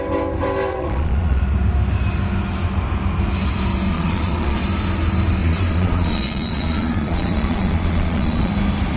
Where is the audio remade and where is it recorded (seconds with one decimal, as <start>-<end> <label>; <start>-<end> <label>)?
0.0-0.7 recorded; 0.7-1.4 remade; 1.4-3.9 recorded; 3.9-4.6 remade; 4.6-5.4 recorded; 5.4-8.5 remade; 8.5-9.0 recorded